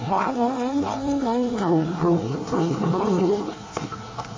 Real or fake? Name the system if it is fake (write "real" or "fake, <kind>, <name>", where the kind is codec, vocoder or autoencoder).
fake, codec, SNAC